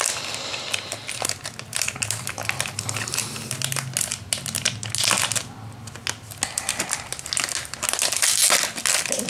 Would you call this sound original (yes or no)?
yes